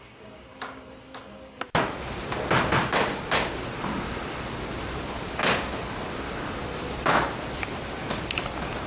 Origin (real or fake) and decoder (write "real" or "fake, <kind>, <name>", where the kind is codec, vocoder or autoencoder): real